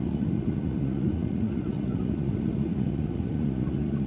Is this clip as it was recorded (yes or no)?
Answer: no